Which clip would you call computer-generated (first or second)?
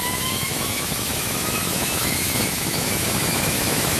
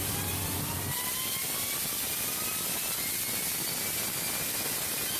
first